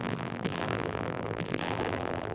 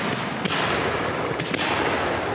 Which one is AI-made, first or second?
first